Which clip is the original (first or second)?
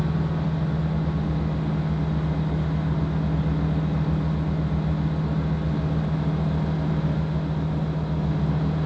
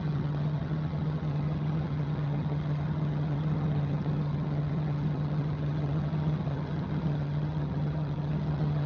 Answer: first